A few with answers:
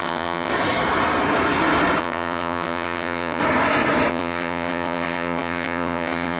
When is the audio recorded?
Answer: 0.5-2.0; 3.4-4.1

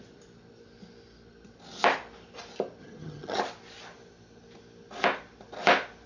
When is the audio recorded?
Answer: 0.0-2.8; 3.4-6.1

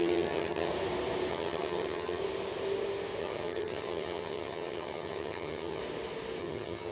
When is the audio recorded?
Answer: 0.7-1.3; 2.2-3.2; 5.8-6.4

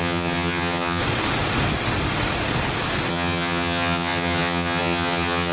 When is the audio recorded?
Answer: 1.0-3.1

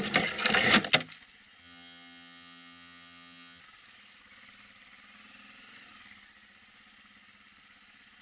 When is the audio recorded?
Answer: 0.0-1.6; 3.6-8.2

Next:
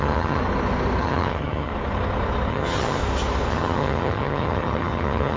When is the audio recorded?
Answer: 0.4-1.0; 1.7-2.5; 3.0-3.5

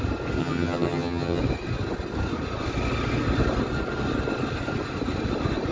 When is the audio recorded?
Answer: 0.0-0.4; 1.4-5.7

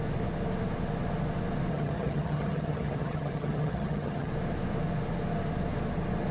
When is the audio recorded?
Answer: 0.0-1.7; 4.3-6.3